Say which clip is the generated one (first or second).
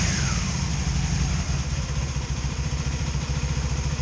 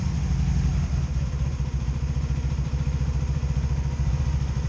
first